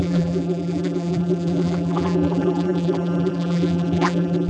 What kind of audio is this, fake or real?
fake